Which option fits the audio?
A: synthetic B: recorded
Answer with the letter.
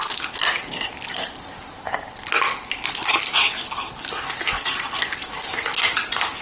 B